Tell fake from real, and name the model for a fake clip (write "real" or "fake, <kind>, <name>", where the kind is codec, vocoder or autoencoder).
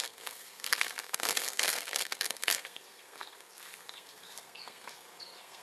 fake, codec, SNAC